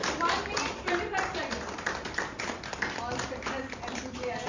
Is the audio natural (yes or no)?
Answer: yes